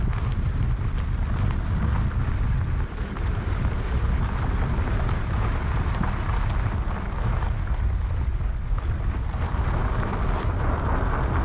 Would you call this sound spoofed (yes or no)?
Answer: no